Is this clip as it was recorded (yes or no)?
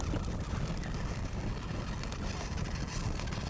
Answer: yes